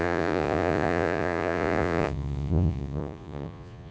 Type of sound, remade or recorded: remade